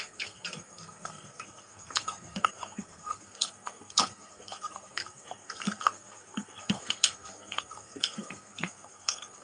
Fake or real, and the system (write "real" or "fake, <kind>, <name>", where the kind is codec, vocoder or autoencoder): fake, codec, SNAC